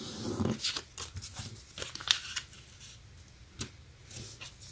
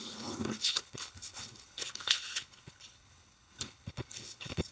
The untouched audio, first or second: first